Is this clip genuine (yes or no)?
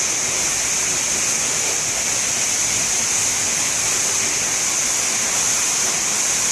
yes